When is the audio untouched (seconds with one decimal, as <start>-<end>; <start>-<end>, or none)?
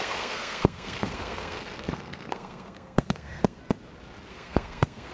3.6-4.3